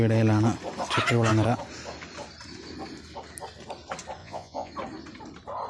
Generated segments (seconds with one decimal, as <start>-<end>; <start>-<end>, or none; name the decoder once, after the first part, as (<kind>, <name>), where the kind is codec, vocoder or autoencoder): 4.2-4.7 (vocoder, Vocos)